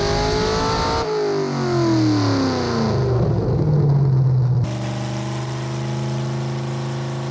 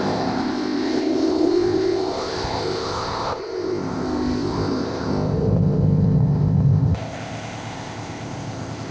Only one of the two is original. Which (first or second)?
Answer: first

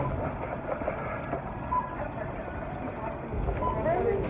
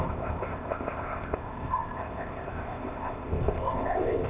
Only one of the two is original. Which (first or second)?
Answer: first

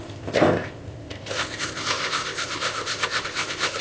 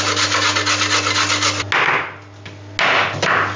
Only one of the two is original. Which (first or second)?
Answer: second